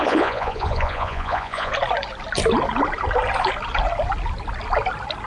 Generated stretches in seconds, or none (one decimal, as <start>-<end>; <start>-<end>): 0.0-1.7